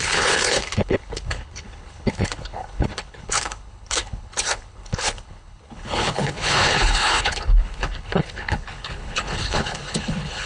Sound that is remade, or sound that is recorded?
remade